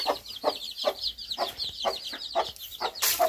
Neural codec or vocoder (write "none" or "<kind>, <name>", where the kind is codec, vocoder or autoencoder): none